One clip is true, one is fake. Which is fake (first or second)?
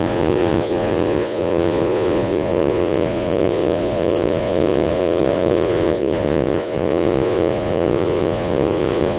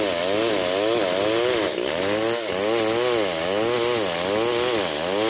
first